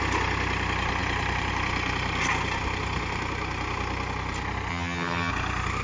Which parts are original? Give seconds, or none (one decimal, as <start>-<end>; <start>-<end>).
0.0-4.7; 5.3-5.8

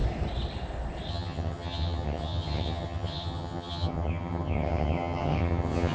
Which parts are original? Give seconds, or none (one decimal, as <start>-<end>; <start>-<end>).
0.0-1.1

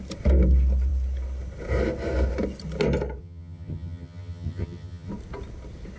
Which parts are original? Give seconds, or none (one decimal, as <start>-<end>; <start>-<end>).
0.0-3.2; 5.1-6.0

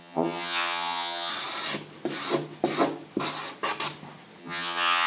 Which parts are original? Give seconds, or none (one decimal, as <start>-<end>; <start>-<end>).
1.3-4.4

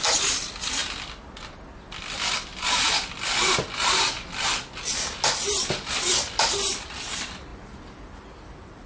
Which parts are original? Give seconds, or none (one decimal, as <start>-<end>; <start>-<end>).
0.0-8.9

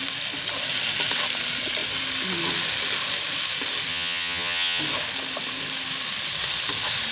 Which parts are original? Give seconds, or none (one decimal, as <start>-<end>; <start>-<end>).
0.0-3.9; 4.8-7.1